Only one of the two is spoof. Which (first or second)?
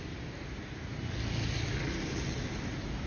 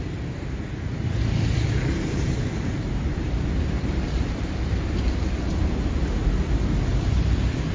second